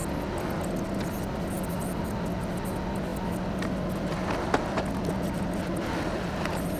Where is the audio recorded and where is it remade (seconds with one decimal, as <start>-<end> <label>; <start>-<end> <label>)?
0.0-6.8 recorded